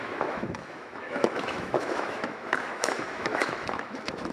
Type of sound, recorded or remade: remade